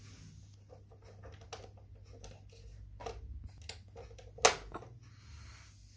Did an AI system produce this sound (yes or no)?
no